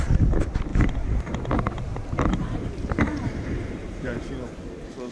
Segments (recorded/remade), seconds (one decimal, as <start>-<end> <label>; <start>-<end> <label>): 0.0-0.7 recorded; 0.7-1.4 remade; 1.4-1.9 recorded; 1.9-4.3 remade; 4.3-5.1 recorded